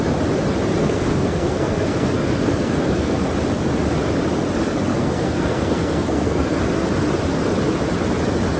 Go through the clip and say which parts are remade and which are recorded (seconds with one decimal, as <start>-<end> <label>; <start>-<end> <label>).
0.0-0.8 recorded; 0.8-3.3 remade; 3.3-4.9 recorded; 4.9-6.6 remade; 6.6-8.6 recorded